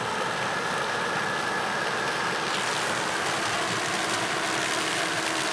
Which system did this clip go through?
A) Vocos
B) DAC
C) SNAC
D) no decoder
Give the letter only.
D